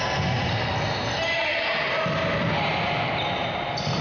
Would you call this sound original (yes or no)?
yes